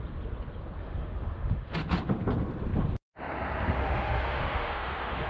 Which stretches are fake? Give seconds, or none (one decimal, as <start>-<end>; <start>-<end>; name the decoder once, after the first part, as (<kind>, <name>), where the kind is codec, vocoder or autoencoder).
0.8-1.8 (autoencoder, DAC-VAE); 3.8-5.3